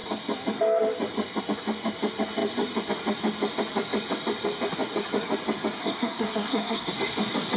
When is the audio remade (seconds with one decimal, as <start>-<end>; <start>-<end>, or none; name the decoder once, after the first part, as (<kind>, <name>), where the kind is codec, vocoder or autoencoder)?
5.8-6.9 (codec, SNAC)